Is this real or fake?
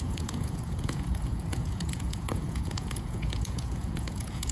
fake